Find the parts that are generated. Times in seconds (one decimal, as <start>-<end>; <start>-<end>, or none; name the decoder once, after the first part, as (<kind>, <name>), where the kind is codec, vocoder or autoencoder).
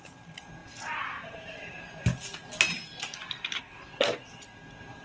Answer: none